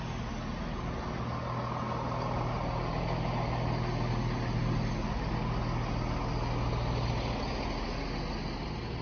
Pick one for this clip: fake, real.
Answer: real